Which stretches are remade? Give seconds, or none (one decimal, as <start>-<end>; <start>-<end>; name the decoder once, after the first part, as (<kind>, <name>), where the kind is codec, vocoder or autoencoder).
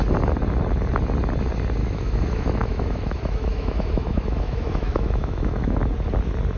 1.8-5.8 (autoencoder, DAC-VAE)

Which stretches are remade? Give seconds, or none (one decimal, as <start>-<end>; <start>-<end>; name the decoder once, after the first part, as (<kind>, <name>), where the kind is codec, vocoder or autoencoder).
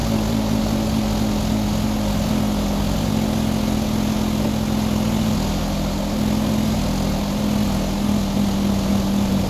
none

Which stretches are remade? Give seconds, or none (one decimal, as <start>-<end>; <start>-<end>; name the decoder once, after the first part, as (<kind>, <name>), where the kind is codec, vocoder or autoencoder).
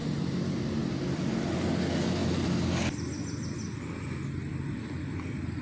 0.0-0.6 (vocoder, BigVGAN v2)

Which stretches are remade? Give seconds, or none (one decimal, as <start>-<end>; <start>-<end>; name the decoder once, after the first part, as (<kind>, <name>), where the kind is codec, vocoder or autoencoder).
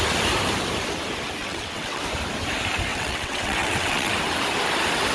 1.4-2.0 (vocoder, WaveNeXt); 2.9-4.1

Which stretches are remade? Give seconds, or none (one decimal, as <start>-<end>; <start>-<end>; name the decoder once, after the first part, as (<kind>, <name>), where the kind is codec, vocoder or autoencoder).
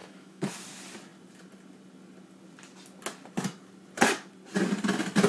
0.0-0.5 (autoencoder, DAC-VAE)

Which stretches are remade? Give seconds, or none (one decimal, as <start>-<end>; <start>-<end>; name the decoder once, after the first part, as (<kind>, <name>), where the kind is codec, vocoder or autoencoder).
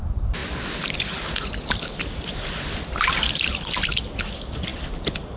none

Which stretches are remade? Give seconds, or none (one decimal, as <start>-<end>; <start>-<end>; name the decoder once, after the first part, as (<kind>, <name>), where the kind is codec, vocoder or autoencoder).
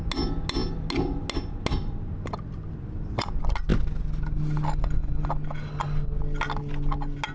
none